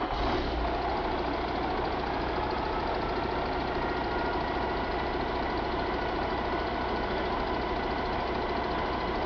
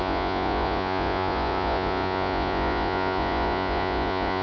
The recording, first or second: first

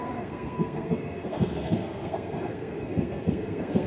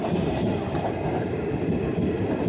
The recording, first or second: second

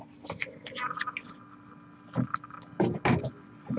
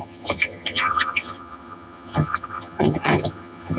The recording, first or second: first